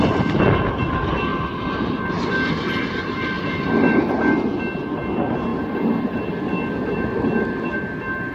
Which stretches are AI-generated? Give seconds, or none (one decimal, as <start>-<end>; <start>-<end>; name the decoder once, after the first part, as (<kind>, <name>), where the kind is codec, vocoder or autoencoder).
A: none